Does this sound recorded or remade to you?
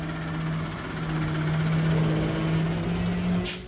recorded